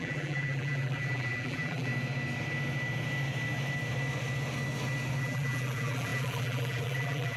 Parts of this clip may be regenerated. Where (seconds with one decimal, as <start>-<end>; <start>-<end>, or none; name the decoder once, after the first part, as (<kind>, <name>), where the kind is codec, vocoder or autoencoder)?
0.0-1.9 (vocoder, BigVGAN v2); 5.2-7.4